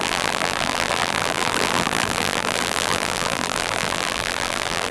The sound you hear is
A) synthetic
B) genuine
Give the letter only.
A